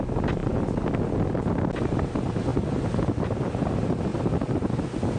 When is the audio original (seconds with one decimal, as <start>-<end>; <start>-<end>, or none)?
0.0-5.2